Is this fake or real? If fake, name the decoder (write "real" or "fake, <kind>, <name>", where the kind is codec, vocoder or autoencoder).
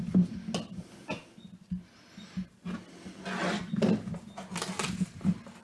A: real